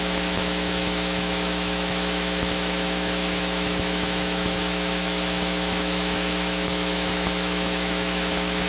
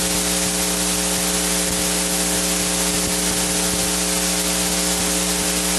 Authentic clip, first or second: second